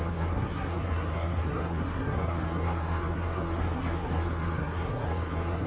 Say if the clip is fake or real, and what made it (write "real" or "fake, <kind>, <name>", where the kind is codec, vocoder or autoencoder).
fake, codec, SNAC